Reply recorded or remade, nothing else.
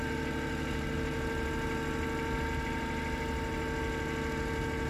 recorded